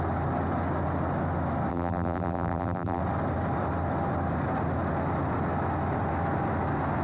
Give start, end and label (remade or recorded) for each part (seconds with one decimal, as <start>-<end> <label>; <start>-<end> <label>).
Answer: 0.0-1.7 recorded; 1.7-3.0 remade; 3.0-7.0 recorded